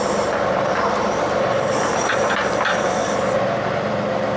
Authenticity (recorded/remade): recorded